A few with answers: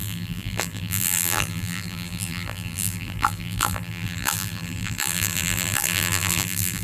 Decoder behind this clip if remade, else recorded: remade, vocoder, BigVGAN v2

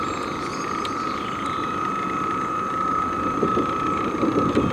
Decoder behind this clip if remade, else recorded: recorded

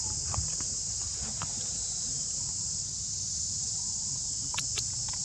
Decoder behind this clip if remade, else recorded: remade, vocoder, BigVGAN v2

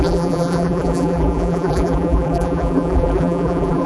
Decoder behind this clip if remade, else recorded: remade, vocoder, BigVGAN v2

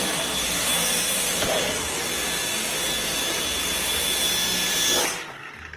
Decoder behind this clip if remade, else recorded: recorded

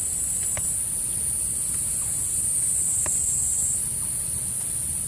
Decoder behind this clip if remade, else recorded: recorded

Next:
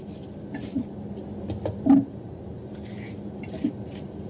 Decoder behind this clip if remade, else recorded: recorded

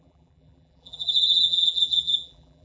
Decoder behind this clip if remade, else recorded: remade, vocoder, BigVGAN v2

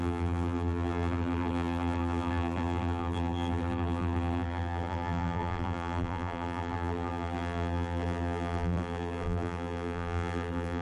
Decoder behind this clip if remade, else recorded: remade, vocoder, BigVGAN v2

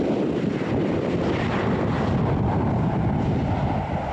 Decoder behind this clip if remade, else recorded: remade, vocoder, BigVGAN v2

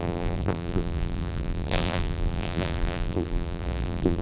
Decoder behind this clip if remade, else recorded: remade, vocoder, BigVGAN v2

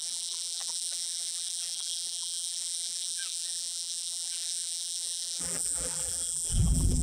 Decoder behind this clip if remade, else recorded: remade, vocoder, BigVGAN v2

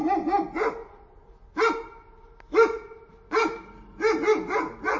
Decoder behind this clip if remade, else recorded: recorded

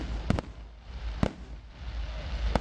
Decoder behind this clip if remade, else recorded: recorded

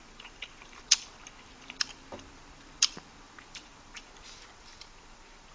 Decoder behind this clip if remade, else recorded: remade, vocoder, BigVGAN v2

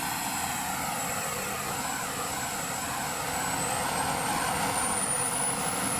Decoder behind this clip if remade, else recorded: recorded